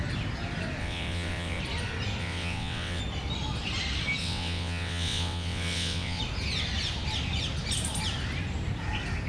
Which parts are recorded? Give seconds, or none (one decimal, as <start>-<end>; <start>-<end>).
0.0-0.8; 1.6-2.2; 3.0-4.2; 6.2-9.3